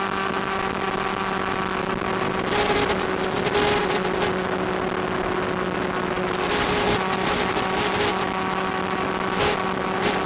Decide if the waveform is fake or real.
real